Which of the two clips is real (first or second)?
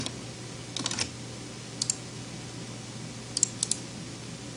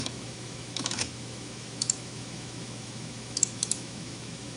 first